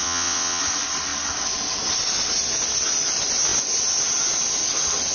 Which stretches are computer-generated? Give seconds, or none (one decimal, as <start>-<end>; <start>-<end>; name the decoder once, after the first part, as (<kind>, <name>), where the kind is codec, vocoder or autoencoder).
0.0-0.6 (vocoder, WaveNeXt)